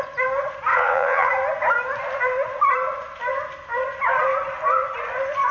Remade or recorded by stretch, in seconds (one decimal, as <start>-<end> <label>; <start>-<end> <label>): 0.0-0.7 recorded; 0.7-1.3 remade; 1.3-5.5 recorded